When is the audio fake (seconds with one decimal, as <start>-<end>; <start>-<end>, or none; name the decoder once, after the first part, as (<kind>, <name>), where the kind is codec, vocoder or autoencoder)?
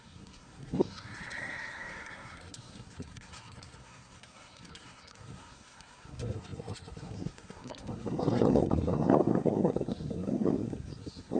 0.0-11.4 (codec, SNAC)